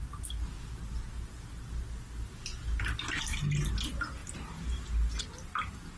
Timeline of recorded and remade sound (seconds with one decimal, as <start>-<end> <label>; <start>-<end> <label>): 0.0-6.0 recorded